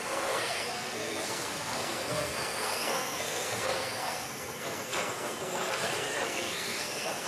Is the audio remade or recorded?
remade